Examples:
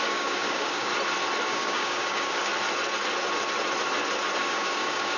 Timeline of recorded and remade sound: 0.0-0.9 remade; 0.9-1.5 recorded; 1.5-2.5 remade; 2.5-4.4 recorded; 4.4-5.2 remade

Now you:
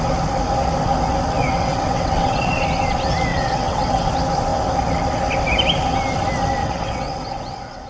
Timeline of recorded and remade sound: 0.0-1.4 recorded; 1.4-2.5 remade; 2.5-3.3 recorded; 3.3-4.1 remade; 4.1-6.6 recorded; 6.6-7.9 remade